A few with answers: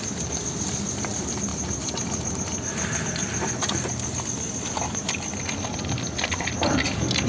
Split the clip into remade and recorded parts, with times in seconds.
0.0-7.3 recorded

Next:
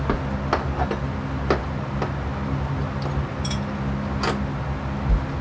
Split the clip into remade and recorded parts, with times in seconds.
0.0-5.4 recorded

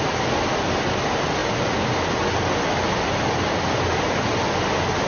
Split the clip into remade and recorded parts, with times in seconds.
0.0-5.1 recorded

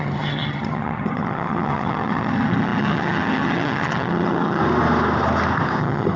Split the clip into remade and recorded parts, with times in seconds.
0.0-4.6 remade; 4.6-5.8 recorded; 5.8-6.2 remade

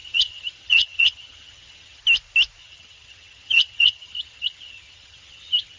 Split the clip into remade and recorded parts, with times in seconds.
0.0-2.0 remade; 2.0-2.6 recorded; 2.6-5.8 remade

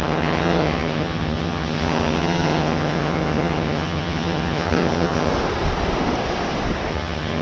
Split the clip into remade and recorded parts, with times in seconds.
0.0-5.3 remade; 5.3-6.9 recorded; 6.9-7.4 remade

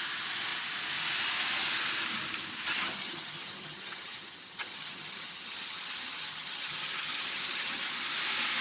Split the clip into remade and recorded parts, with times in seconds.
0.0-2.7 recorded; 2.7-7.9 remade; 7.9-8.6 recorded